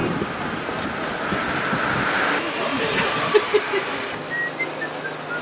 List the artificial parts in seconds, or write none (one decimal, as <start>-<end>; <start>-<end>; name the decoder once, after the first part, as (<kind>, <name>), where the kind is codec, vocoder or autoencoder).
0.0-0.6 (vocoder, BigVGAN v2); 2.7-3.9